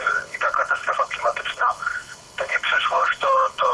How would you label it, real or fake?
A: fake